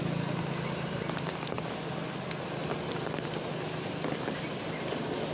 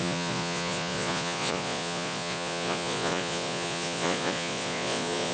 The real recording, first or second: first